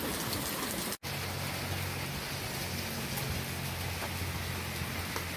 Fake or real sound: real